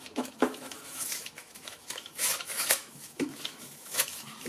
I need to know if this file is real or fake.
fake